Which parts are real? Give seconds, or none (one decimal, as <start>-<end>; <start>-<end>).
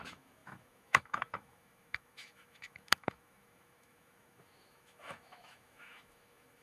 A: none